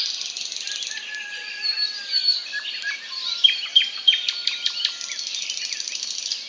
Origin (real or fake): fake